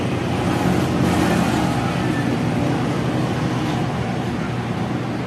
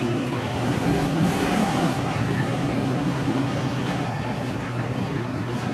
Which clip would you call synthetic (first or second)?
second